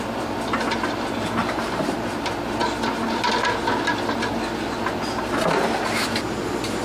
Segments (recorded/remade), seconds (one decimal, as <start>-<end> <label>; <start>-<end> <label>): 0.0-1.4 recorded; 1.4-2.2 remade; 2.2-6.8 recorded